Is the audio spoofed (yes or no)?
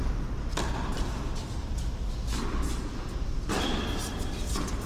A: no